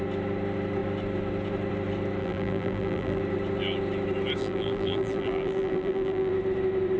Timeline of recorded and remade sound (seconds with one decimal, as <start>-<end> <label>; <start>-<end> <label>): 0.0-2.2 recorded; 2.2-3.2 remade; 3.2-4.4 recorded; 4.4-6.3 remade; 6.3-7.0 recorded